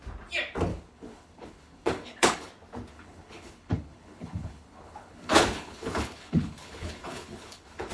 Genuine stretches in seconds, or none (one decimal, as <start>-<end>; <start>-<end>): 0.0-0.7; 2.5-2.9